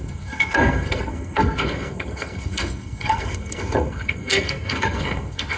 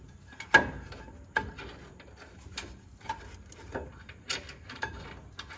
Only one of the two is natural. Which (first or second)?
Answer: second